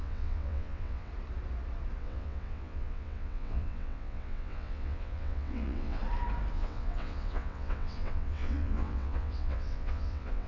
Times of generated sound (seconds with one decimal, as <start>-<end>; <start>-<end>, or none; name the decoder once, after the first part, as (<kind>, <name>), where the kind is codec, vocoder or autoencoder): 0.0-1.1 (vocoder, WaveNeXt); 2.0-6.0; 6.5-10.5